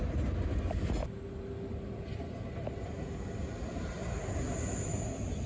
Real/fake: real